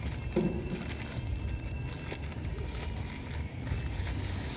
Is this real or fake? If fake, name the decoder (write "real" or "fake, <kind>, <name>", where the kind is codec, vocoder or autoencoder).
real